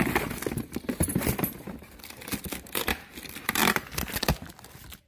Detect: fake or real real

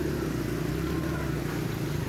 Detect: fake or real real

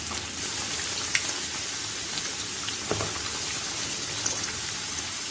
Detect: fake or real real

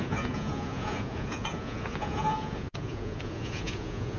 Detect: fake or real fake